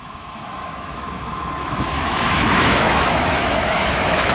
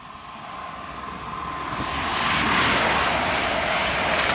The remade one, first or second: first